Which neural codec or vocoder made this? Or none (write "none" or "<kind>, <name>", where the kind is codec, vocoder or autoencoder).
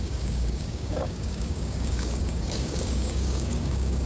codec, DAC